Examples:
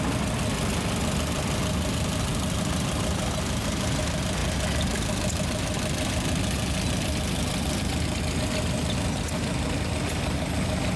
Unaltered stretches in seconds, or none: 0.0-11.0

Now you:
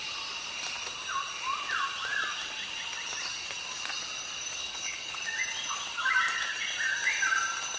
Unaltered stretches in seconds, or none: 0.0-4.6; 5.2-7.8

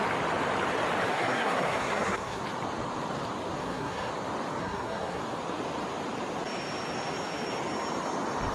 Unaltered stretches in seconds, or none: 0.0-1.1; 2.4-3.6; 4.1-4.6; 5.2-8.5

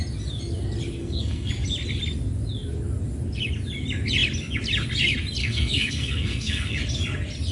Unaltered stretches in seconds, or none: 0.0-1.0; 1.5-5.4; 6.8-7.5

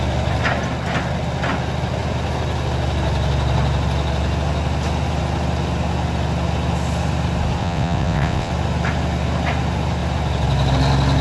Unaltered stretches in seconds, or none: 0.0-7.6; 8.5-11.2

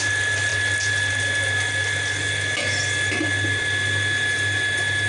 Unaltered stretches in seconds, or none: 0.0-5.1